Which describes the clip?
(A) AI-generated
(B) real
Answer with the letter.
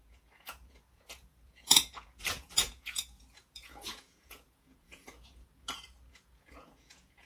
A